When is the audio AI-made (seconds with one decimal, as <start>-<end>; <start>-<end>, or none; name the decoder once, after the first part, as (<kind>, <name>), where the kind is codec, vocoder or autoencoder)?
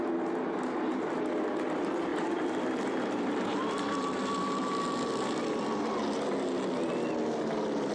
2.1-5.8 (vocoder, BigVGAN v2)